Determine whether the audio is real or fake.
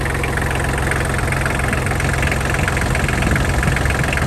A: real